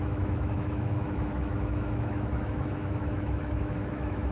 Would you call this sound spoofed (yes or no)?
yes